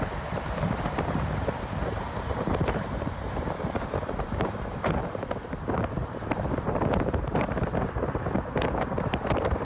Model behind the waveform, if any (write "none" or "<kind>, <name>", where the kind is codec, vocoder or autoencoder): vocoder, BigVGAN v2